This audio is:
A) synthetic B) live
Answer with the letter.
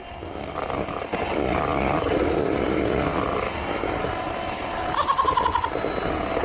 B